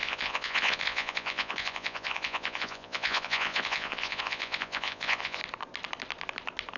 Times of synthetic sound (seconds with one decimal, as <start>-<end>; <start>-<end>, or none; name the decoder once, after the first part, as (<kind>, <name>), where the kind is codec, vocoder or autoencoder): 0.0-5.4 (vocoder, Vocos)